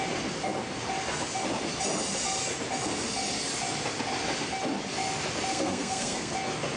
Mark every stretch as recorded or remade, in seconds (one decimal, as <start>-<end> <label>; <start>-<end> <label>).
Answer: 0.0-5.5 recorded; 5.5-6.3 remade; 6.3-6.8 recorded